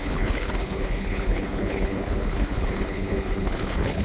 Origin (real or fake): fake